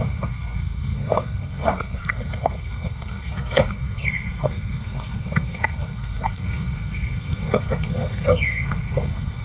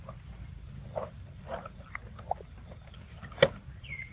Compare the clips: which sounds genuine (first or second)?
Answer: second